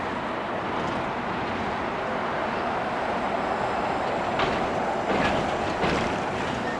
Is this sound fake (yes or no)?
no